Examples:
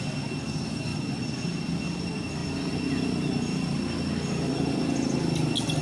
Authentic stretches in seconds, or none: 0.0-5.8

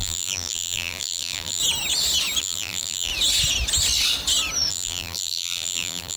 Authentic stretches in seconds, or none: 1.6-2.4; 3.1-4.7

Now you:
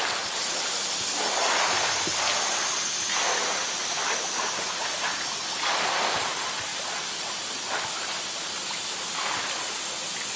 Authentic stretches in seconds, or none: 0.0-10.4

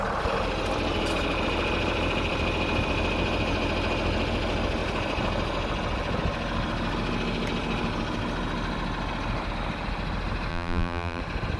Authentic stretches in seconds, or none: 0.0-10.5; 11.2-11.6

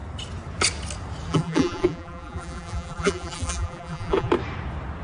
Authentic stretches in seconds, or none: 0.0-1.3; 4.3-5.0

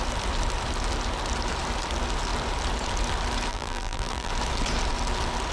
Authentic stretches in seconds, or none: 0.0-3.5; 4.3-5.5

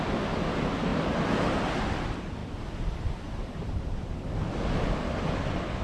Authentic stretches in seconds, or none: 0.0-2.4; 4.5-5.8

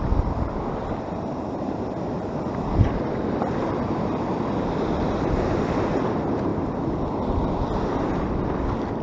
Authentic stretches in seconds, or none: none